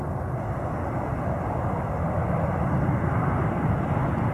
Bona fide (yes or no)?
yes